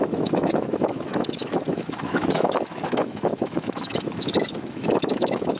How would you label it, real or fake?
fake